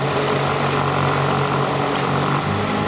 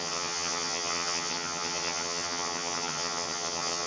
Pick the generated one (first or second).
second